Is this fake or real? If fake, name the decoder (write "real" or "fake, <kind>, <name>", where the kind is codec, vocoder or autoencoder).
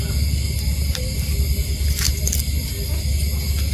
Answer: real